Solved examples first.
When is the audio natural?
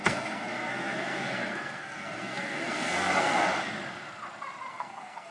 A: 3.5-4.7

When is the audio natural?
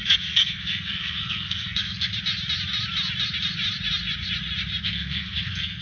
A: 2.1-4.8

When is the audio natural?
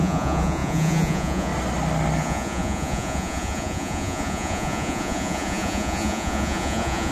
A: 1.5-2.2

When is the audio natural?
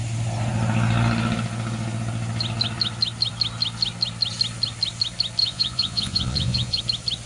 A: 0.0-5.4; 6.8-7.3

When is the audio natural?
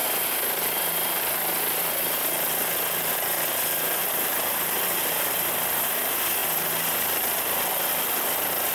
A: 0.0-4.0; 5.5-8.7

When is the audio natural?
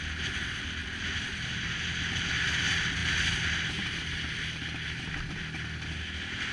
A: 0.0-6.5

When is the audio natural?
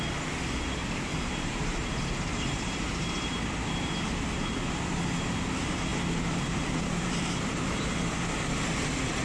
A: 0.0-0.8; 4.6-5.9; 7.9-9.2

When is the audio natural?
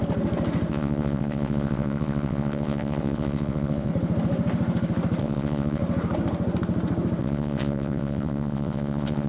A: 0.0-0.7; 3.9-5.2; 5.8-7.2